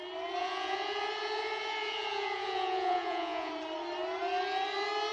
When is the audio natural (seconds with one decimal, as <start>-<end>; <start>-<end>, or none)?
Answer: 0.0-0.4; 3.5-5.1